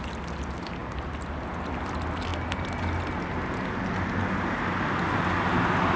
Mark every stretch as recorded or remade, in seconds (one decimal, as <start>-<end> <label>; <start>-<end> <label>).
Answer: 0.0-6.0 recorded